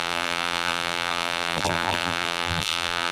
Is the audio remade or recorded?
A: remade